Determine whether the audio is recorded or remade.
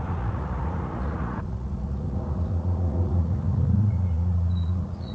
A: remade